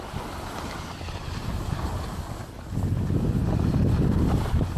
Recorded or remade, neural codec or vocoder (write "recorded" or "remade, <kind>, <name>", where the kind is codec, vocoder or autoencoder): recorded